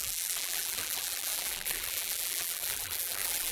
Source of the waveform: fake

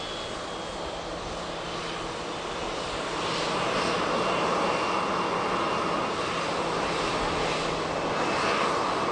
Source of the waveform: real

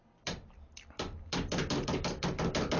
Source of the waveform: fake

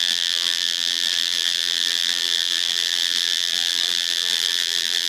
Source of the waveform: fake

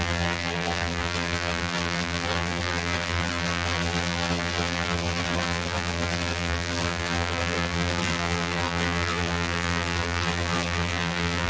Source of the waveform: fake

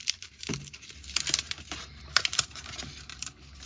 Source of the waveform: fake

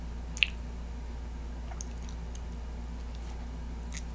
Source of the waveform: real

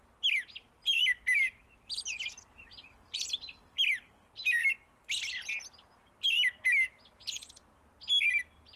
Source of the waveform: real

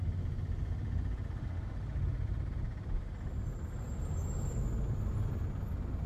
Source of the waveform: real